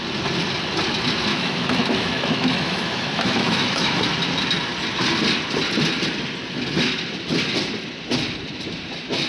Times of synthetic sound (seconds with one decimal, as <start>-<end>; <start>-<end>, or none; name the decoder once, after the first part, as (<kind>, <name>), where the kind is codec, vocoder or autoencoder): 1.3-4.0 (autoencoder, DAC-VAE)